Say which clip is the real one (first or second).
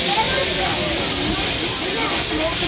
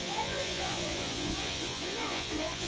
first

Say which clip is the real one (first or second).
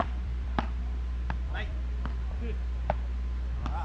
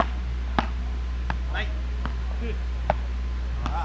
second